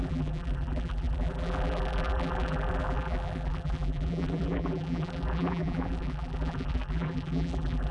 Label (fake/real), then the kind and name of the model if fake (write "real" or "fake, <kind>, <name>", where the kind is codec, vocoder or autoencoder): fake, vocoder, BigVGAN v2